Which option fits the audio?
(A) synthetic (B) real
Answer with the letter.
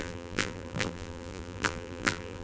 A